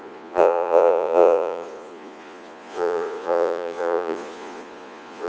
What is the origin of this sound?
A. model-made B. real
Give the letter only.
A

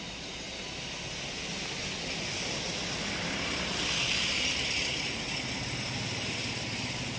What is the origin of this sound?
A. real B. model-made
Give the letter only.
A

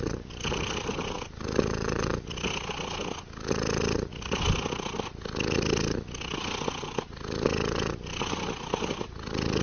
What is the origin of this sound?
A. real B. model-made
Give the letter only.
A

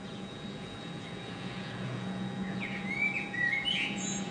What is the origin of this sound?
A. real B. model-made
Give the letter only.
B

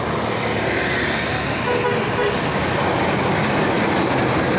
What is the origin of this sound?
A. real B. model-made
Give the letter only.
A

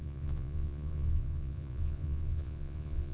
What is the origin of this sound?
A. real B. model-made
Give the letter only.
B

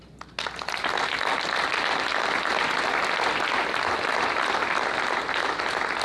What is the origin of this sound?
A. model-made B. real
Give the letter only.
B